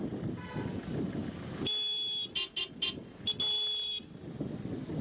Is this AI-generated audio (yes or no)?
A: no